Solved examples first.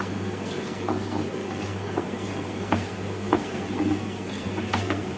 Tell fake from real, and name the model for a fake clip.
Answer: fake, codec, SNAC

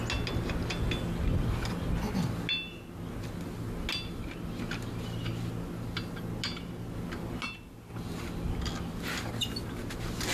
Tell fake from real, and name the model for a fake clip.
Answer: real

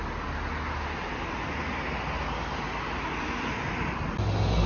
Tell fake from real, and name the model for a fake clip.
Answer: real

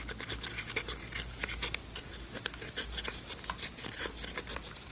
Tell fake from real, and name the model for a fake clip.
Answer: real